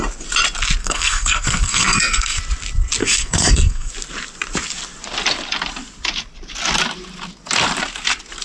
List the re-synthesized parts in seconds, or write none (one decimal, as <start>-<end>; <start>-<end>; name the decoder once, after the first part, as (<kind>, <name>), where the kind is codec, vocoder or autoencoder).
0.8-2.4 (codec, SNAC); 3.0-3.9